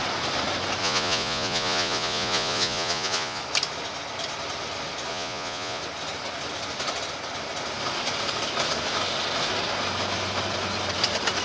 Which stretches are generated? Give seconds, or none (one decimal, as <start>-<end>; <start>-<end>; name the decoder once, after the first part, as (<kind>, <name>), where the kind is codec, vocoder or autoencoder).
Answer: 0.8-3.4 (vocoder, Vocos); 5.1-5.8